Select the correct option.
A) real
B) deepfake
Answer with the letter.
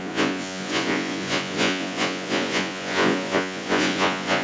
B